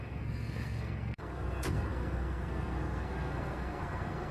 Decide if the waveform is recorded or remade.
remade